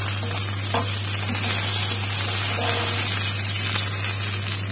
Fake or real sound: real